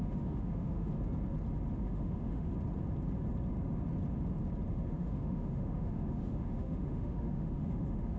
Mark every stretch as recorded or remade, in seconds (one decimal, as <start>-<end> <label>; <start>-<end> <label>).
0.0-0.9 remade; 0.9-1.8 recorded; 1.8-2.5 remade; 2.5-4.7 recorded; 4.7-8.2 remade